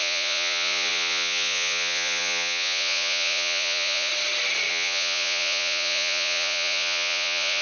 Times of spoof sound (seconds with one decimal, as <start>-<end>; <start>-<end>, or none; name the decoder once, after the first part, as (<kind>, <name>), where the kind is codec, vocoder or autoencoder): 0.0-4.1 (vocoder, Vocos); 4.7-7.6